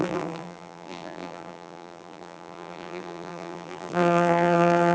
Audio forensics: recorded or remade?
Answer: remade